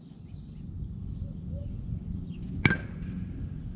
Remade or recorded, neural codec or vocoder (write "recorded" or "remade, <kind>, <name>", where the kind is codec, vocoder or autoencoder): recorded